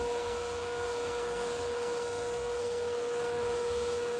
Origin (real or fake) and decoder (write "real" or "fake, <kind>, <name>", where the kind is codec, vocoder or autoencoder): fake, codec, SNAC